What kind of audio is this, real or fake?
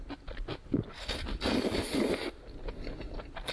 real